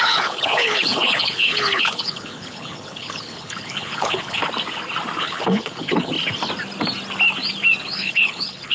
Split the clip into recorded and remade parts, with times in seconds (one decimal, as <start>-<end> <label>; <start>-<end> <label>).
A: 0.0-4.4 remade; 4.4-5.2 recorded; 5.2-6.1 remade; 6.1-7.8 recorded; 7.8-8.7 remade